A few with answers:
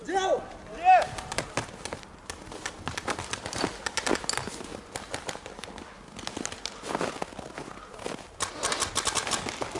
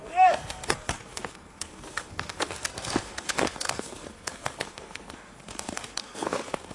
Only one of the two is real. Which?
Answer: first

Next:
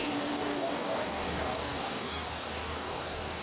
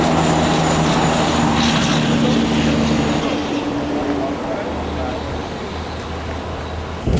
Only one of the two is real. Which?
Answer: second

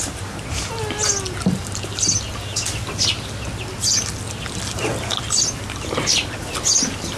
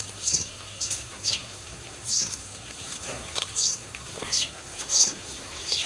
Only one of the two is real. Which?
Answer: first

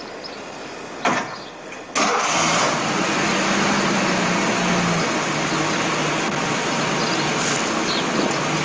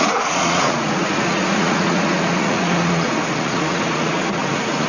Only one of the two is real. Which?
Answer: first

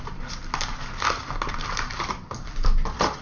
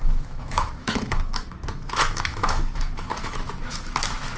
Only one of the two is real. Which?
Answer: first